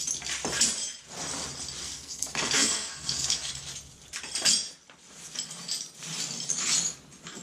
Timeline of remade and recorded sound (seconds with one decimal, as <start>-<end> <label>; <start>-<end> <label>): 0.0-1.8 recorded; 1.8-3.5 remade; 3.5-7.4 recorded